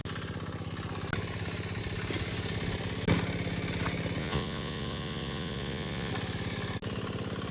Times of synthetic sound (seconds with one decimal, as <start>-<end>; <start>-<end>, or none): 4.2-6.1